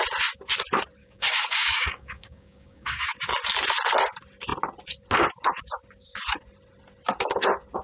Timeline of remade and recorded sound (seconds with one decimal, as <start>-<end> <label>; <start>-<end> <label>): 0.0-1.0 recorded; 1.0-3.1 remade; 3.1-7.8 recorded